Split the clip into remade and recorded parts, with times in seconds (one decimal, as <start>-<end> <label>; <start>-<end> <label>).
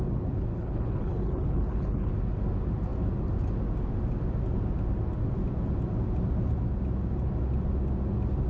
0.0-0.5 recorded; 0.5-2.1 remade; 2.1-8.5 recorded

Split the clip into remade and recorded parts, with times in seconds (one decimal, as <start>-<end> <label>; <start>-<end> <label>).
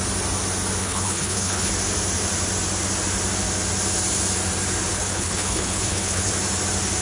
0.0-0.8 recorded; 0.8-1.7 remade; 1.7-4.9 recorded; 4.9-6.3 remade; 6.3-7.0 recorded